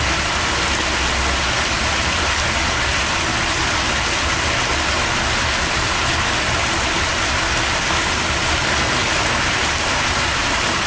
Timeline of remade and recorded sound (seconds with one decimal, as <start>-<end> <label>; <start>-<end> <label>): 0.0-10.9 recorded